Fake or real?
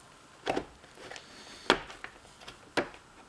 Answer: real